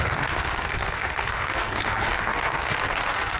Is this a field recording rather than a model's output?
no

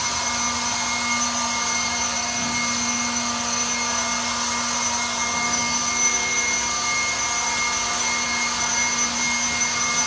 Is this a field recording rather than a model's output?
yes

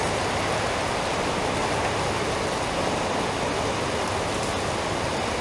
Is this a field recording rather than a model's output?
yes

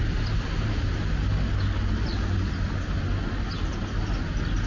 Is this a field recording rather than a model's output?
yes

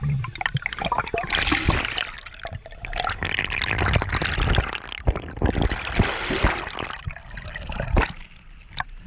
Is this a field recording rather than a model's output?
yes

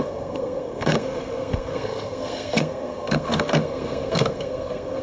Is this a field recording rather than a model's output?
no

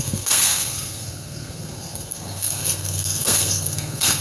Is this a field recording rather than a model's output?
no